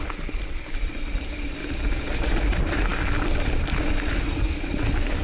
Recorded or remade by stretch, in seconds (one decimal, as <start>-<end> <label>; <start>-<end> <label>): 0.0-1.6 recorded; 1.6-2.2 remade; 2.2-5.2 recorded